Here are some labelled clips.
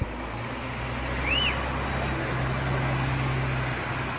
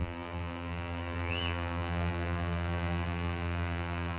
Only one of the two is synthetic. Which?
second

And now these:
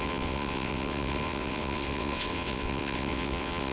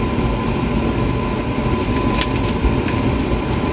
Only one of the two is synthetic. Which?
first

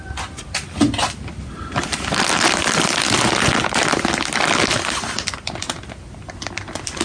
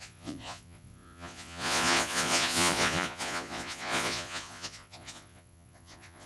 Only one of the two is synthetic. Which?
second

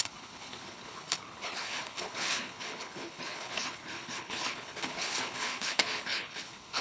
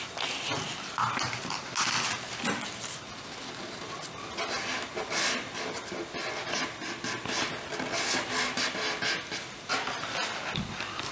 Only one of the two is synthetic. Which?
first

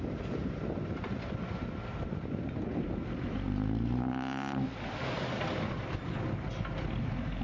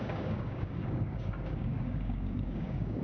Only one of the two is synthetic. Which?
second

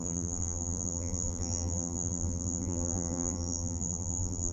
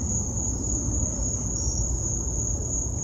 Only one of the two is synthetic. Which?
first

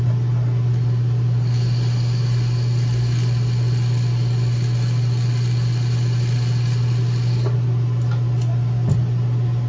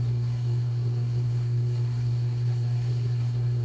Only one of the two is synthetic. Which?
second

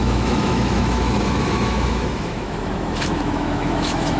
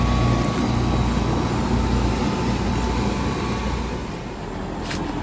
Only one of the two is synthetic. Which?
first